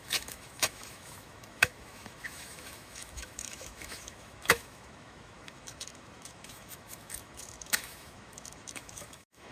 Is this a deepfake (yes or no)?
yes